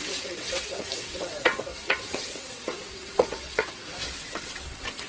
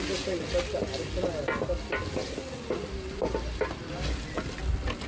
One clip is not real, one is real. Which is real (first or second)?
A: second